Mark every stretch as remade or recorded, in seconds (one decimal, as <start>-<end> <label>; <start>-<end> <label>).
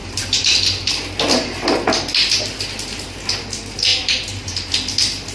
0.0-0.9 remade; 0.9-3.9 recorded; 3.9-4.7 remade; 4.7-5.3 recorded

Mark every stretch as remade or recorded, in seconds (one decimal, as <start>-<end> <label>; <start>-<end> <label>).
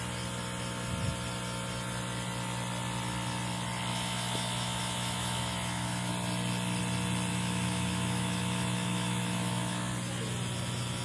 0.0-3.9 recorded; 3.9-6.1 remade; 6.1-7.3 recorded; 7.3-9.9 remade; 9.9-11.0 recorded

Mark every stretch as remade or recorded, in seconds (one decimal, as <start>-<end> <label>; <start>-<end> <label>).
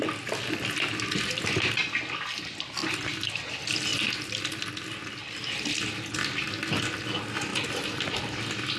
0.0-2.8 recorded; 2.8-3.5 remade; 3.5-5.2 recorded; 5.2-5.9 remade; 5.9-7.5 recorded; 7.5-8.1 remade; 8.1-8.8 recorded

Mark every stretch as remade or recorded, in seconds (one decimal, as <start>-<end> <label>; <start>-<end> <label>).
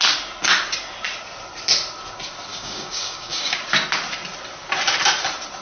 0.0-2.5 recorded; 2.5-3.6 remade; 3.6-5.6 recorded